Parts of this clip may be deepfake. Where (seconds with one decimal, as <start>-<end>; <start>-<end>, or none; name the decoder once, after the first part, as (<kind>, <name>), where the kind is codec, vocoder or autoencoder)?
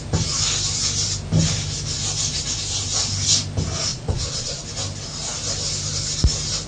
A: 3.9-4.6 (vocoder, Vocos)